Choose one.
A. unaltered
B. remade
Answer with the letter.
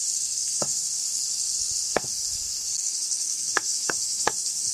B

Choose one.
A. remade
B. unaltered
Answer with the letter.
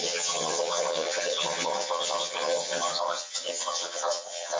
A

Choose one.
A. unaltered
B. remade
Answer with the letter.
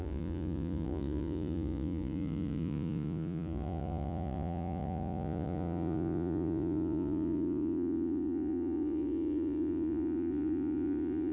B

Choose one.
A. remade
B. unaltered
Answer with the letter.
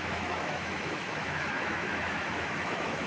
A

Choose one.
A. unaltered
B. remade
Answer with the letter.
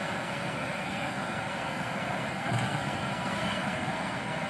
B